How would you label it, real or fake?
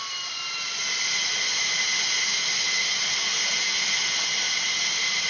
real